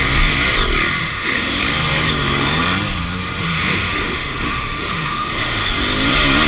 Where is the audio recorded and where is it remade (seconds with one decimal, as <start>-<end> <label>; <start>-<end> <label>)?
0.0-1.0 recorded; 1.0-1.6 remade; 1.6-3.5 recorded; 3.5-5.7 remade; 5.7-6.5 recorded